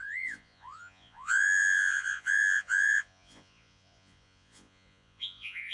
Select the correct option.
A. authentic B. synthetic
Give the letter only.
B